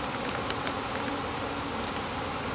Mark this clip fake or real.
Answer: real